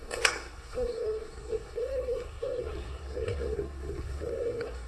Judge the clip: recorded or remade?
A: remade